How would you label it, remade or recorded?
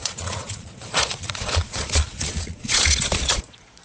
remade